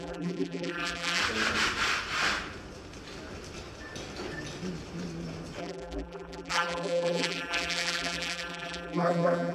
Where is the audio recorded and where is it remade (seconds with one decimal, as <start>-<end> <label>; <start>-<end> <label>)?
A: 0.0-1.2 remade; 1.2-5.6 recorded; 5.6-9.5 remade